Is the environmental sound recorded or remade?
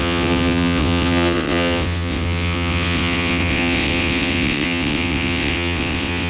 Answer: remade